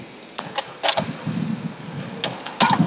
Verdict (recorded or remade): recorded